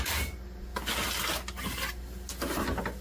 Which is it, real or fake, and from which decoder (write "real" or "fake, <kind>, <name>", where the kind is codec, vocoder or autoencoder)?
real